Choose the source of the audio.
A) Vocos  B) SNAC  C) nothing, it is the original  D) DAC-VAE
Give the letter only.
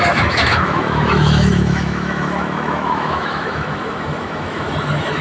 D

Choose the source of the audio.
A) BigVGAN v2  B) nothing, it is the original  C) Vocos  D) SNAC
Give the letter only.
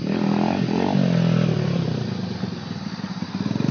B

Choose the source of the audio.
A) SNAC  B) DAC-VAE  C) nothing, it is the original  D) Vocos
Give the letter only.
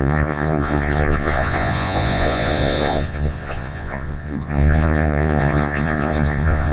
D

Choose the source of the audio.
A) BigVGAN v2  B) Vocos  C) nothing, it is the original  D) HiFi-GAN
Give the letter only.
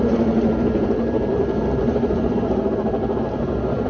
C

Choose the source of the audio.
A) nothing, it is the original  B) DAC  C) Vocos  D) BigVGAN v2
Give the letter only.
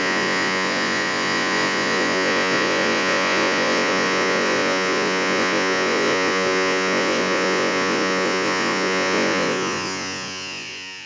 C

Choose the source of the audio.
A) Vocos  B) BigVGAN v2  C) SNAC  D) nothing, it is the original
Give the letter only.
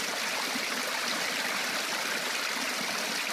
D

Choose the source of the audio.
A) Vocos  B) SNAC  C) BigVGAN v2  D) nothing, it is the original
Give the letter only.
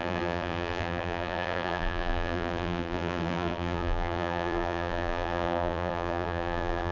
C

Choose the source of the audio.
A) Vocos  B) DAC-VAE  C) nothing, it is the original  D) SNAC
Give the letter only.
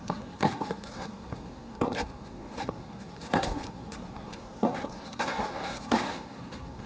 D